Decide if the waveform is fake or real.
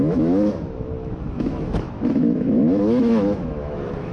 fake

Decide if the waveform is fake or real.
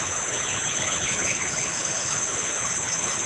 fake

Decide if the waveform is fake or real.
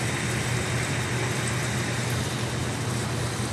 real